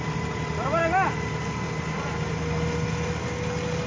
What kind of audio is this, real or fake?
real